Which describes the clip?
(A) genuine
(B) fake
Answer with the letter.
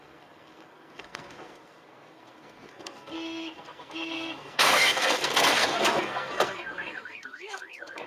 B